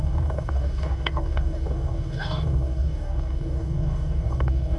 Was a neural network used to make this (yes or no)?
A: yes